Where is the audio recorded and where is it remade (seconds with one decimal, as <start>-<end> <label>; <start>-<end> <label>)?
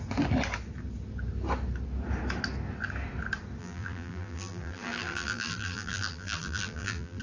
0.0-3.6 recorded; 3.6-7.2 remade